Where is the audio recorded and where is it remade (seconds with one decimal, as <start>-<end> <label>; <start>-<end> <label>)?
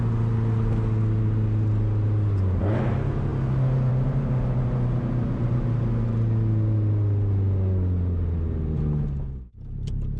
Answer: 0.0-10.2 recorded